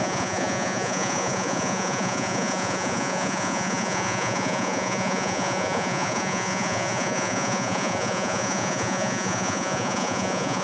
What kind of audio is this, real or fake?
fake